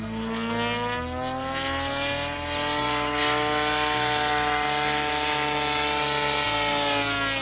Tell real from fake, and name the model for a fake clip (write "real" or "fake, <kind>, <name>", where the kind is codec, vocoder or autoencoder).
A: real